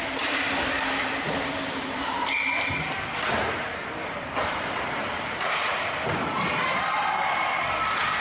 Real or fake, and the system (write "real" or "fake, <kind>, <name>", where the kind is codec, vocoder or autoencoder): fake, vocoder, BigVGAN v2